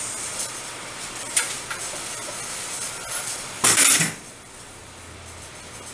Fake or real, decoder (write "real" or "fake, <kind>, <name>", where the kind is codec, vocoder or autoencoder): fake, vocoder, BigVGAN v2